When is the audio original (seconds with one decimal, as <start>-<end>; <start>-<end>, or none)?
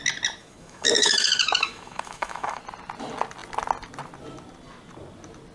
0.0-0.4; 2.6-5.5